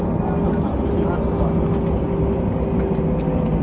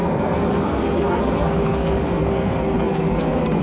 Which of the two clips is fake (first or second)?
second